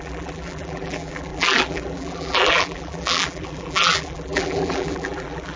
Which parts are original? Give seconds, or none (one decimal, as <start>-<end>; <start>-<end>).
none

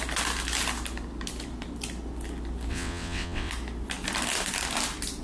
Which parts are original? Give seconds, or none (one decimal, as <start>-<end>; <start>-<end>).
0.0-2.7; 3.5-5.2

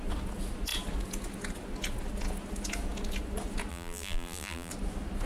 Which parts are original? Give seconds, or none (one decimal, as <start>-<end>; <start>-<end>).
0.0-3.7; 4.7-5.3